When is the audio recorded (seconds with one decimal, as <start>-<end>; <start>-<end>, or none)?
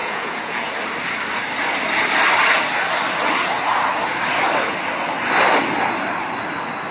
0.7-6.9